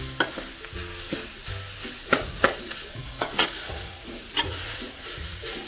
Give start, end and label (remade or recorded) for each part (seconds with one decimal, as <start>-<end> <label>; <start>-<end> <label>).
0.0-2.0 recorded; 2.0-5.7 remade